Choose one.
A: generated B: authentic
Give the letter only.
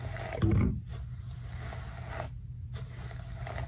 B